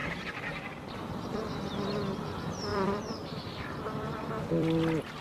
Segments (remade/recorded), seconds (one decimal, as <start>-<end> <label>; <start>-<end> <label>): 0.0-1.6 remade; 1.6-2.7 recorded; 2.7-5.2 remade